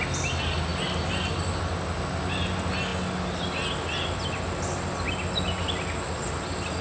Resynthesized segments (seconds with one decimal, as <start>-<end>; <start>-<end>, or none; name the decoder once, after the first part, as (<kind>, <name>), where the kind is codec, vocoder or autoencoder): none